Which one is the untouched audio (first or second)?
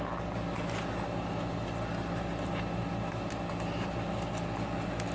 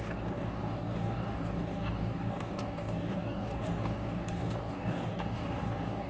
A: first